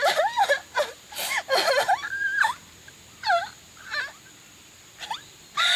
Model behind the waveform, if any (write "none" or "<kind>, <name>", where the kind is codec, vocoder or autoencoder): vocoder, BigVGAN v2